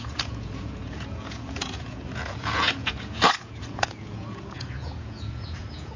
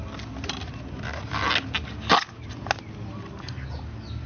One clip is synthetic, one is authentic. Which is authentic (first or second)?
second